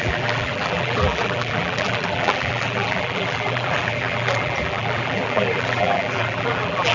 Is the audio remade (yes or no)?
yes